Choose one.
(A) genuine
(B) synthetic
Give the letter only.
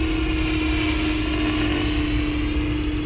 A